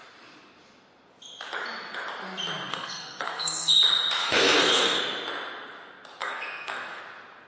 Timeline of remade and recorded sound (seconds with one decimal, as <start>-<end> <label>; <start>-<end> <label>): 0.0-2.7 recorded; 2.7-3.7 remade; 3.7-4.2 recorded; 4.2-5.0 remade; 5.0-6.2 recorded; 6.2-7.0 remade; 7.0-7.5 recorded